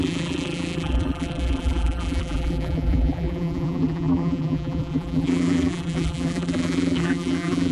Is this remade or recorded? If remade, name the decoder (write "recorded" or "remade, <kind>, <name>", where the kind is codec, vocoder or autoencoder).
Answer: remade, vocoder, BigVGAN v2